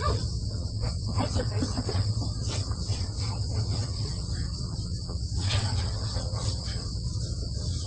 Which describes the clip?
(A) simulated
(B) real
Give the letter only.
A